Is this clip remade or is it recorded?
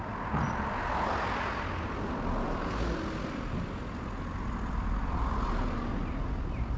recorded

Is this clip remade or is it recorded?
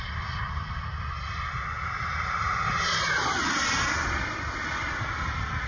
recorded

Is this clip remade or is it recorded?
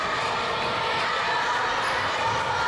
recorded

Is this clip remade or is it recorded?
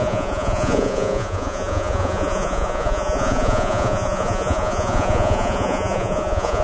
remade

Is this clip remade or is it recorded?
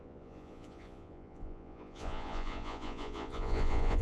remade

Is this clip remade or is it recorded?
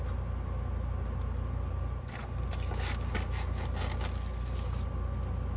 recorded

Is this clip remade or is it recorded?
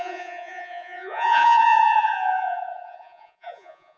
remade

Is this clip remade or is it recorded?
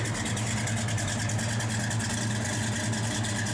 recorded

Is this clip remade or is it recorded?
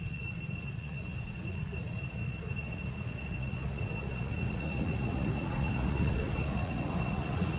remade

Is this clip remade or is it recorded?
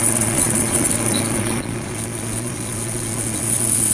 remade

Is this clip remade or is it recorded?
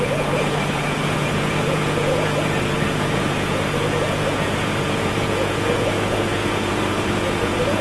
remade